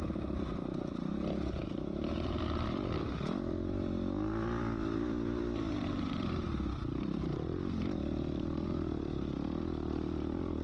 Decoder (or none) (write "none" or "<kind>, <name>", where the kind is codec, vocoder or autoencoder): vocoder, BigVGAN v2